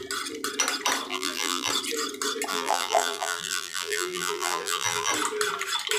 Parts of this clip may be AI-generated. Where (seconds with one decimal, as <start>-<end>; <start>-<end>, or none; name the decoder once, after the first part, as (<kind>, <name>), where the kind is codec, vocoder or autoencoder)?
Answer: 1.1-1.7 (vocoder, BigVGAN v2); 2.5-5.1

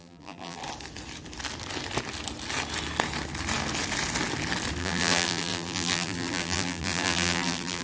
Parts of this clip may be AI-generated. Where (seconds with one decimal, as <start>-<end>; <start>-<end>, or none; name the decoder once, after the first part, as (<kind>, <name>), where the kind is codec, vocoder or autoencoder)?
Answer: 0.0-0.6 (vocoder, BigVGAN v2); 4.8-7.8

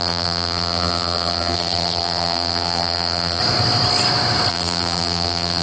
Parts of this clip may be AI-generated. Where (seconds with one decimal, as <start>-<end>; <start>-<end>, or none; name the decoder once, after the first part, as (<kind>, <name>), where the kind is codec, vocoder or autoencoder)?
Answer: 0.0-3.4 (vocoder, BigVGAN v2); 4.5-5.6

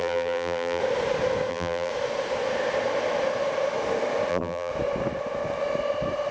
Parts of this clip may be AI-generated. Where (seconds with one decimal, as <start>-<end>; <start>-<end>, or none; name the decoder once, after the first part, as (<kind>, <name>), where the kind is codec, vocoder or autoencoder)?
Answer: 0.0-0.8 (vocoder, BigVGAN v2); 1.5-1.9; 4.3-4.7

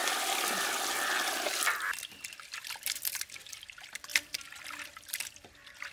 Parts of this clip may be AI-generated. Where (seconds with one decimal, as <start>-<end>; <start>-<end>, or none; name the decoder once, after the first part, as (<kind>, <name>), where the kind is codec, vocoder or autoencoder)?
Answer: none

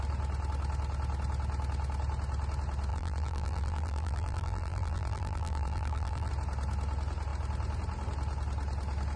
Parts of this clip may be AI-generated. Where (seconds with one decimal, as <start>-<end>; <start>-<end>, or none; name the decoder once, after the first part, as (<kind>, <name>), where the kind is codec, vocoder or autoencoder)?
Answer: 2.9-6.3 (vocoder, BigVGAN v2)